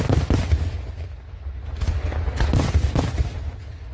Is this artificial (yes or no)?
no